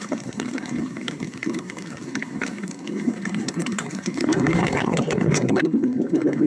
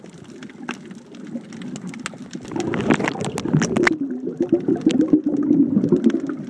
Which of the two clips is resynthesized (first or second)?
first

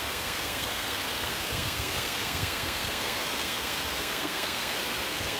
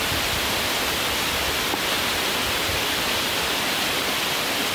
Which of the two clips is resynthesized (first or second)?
first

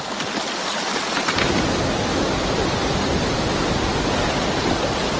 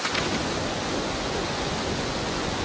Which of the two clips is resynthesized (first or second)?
second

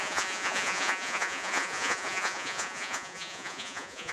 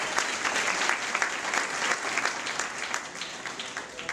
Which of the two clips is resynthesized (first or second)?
first